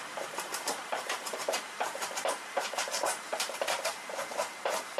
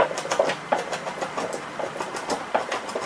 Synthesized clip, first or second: first